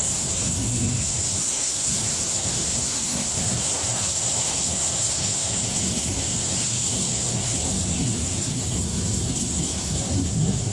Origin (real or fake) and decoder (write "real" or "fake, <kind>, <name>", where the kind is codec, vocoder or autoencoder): fake, codec, SNAC